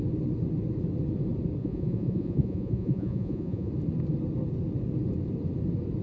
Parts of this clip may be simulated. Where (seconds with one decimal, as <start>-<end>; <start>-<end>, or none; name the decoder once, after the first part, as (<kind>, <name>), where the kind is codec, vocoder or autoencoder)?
1.6-3.7 (vocoder, Vocos)

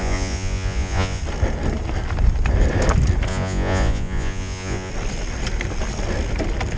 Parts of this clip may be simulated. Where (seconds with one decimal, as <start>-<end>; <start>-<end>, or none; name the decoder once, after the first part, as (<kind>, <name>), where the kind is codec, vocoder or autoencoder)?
0.0-1.2 (vocoder, Vocos); 3.3-4.9

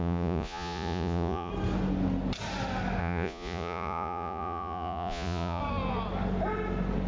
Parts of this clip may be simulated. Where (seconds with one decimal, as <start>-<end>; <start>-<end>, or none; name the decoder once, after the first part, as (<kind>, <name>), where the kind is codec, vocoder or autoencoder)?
0.0-1.5 (vocoder, Vocos); 3.0-5.6

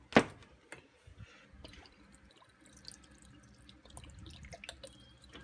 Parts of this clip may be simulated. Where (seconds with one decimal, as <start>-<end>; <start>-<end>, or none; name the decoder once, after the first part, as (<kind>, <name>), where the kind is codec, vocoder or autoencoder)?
none